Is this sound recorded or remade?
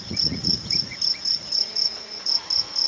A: remade